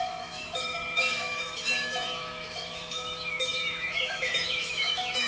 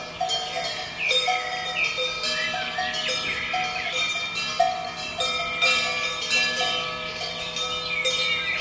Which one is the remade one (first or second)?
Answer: first